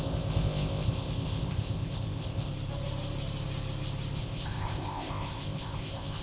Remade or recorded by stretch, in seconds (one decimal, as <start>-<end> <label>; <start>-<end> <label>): 0.0-2.5 remade; 2.5-4.2 recorded; 4.2-6.2 remade